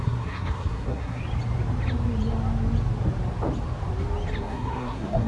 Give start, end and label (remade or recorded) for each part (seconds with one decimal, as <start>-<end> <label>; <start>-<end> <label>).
0.0-1.2 remade; 1.2-4.4 recorded; 4.4-5.3 remade